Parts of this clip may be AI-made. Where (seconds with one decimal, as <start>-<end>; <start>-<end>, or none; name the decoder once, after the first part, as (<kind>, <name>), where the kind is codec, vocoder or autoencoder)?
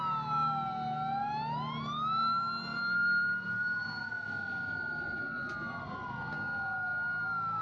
none